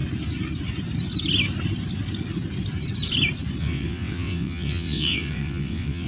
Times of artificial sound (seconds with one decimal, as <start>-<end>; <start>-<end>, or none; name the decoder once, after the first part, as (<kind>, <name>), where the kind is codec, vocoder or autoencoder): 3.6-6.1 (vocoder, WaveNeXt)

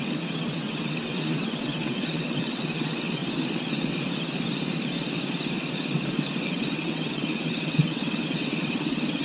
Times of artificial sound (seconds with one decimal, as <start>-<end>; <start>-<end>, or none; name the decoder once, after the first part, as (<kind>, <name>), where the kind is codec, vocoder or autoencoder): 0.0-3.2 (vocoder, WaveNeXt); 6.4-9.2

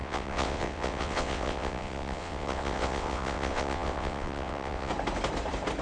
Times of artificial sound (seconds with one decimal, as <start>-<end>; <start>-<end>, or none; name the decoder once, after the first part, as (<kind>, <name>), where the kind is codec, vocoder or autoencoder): 0.0-4.9 (vocoder, WaveNeXt)

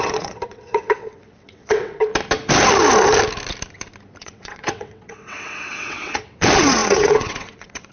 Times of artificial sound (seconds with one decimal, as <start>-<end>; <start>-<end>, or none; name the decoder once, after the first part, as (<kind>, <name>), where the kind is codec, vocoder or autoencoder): 0.0-2.1 (vocoder, WaveNeXt); 4.2-7.9

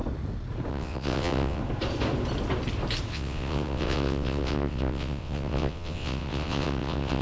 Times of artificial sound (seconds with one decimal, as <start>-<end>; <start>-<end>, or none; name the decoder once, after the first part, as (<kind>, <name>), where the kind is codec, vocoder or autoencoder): 0.7-1.6 (vocoder, WaveNeXt); 3.1-7.2

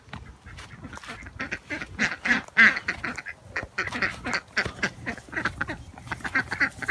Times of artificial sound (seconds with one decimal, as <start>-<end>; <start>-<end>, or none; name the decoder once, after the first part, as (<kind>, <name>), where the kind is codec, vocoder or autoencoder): none

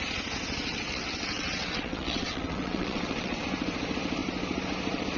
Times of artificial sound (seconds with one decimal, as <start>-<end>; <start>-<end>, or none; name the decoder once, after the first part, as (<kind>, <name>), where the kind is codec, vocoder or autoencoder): 0.7-3.4 (vocoder, WaveNeXt)